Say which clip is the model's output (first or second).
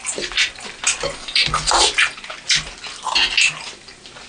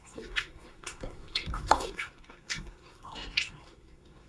second